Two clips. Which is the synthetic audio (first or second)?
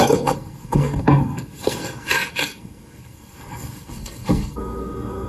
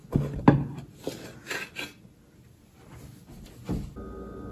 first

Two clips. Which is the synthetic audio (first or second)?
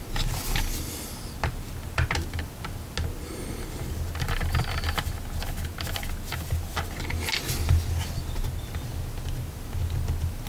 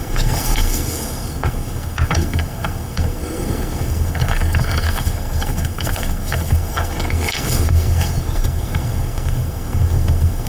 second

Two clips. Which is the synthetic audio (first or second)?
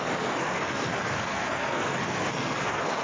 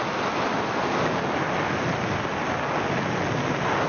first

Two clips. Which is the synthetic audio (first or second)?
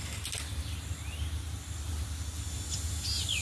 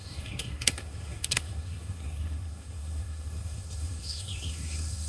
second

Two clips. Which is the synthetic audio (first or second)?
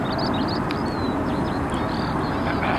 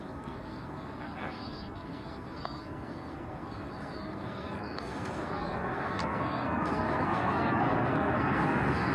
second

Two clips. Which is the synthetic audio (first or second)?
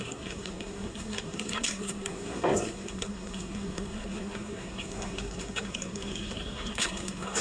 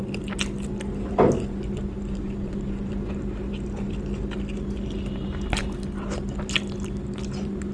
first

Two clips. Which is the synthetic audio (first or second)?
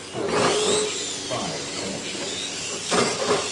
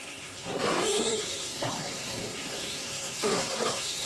second